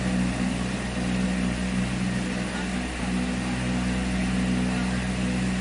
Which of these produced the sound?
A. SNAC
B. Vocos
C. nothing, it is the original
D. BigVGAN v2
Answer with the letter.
C